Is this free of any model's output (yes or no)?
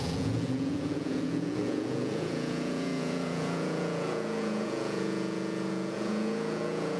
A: no